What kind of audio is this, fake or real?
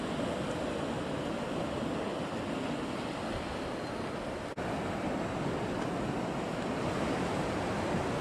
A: real